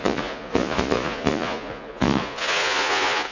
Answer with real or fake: fake